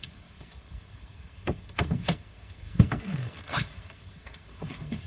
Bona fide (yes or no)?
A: no